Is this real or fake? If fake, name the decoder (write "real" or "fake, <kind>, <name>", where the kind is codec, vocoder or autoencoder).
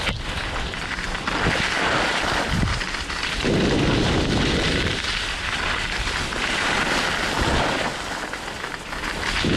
real